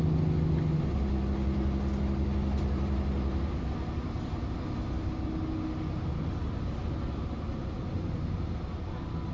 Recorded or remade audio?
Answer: recorded